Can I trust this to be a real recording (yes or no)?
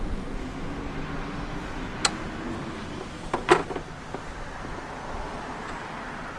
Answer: yes